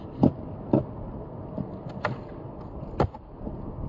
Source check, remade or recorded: recorded